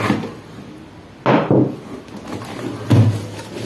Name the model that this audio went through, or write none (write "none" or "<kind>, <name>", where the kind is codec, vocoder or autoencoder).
none